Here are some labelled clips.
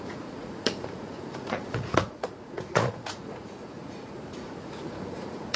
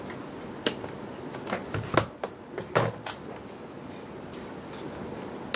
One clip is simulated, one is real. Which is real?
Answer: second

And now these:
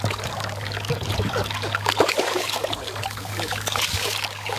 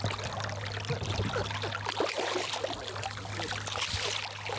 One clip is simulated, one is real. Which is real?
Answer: second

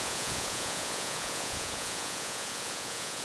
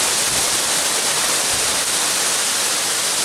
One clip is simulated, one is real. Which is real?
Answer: second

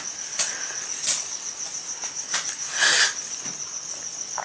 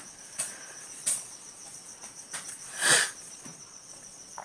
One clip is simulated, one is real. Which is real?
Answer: first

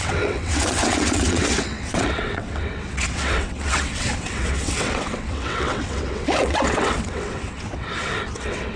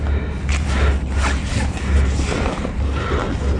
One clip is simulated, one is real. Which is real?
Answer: second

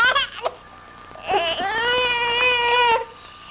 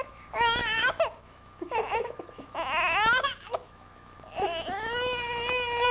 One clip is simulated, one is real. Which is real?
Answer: first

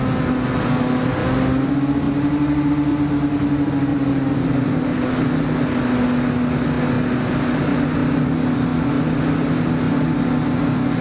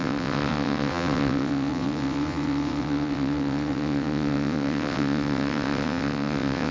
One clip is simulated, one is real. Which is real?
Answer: first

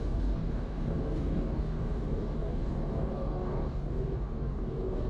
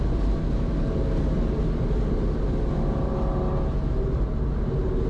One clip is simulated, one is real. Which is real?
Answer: second